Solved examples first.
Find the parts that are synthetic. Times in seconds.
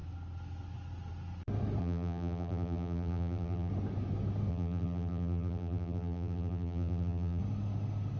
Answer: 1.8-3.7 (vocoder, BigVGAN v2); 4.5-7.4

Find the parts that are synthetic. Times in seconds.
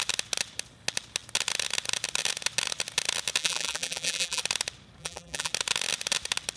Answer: 3.4-4.4 (vocoder, BigVGAN v2); 5.0-5.5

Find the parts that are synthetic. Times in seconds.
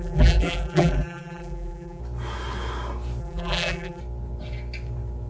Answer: 0.0-2.0 (vocoder, BigVGAN v2); 3.2-4.0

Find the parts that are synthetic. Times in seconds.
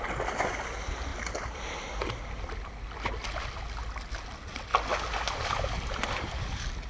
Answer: 1.1-2.2 (vocoder, BigVGAN v2)